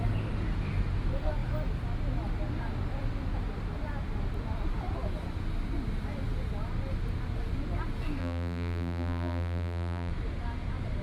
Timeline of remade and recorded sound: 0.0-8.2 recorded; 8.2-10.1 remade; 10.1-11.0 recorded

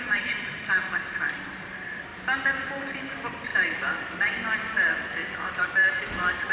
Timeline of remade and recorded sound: 0.0-6.5 remade

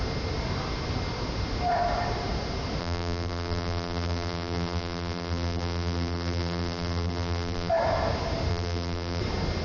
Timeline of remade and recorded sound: 0.0-2.8 recorded; 2.8-7.7 remade; 7.7-8.5 recorded; 8.5-9.2 remade; 9.2-9.6 recorded

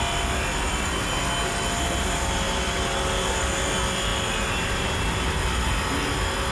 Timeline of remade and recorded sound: 0.0-4.1 recorded; 4.1-5.0 remade; 5.0-6.5 recorded

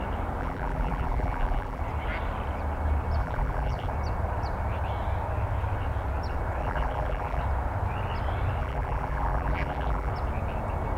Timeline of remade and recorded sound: 0.0-0.4 recorded; 0.4-1.8 remade; 1.8-3.2 recorded; 3.2-3.9 remade; 3.9-6.6 recorded; 6.6-7.4 remade; 7.4-8.6 recorded; 8.6-10.1 remade; 10.1-11.0 recorded

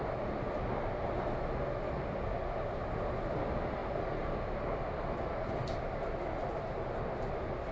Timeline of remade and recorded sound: 0.0-7.7 recorded